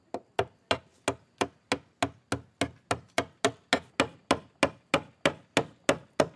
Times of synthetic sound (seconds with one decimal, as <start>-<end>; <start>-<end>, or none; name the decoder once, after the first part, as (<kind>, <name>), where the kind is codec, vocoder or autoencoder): none